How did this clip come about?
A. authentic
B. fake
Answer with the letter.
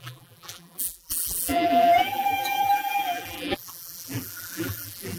B